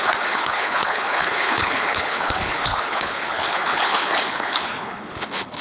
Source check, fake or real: fake